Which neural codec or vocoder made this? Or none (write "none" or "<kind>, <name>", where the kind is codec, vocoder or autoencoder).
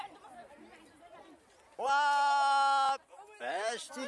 none